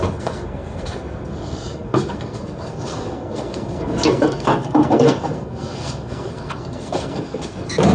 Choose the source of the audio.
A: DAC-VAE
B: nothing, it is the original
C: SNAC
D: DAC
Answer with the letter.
C